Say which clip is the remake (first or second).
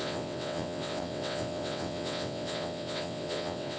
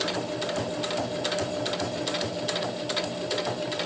first